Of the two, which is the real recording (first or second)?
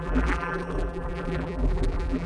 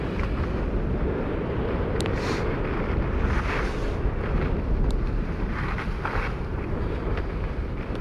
second